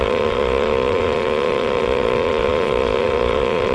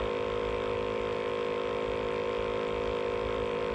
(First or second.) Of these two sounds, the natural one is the second